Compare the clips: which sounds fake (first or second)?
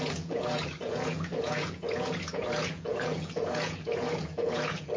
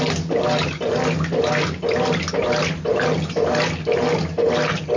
first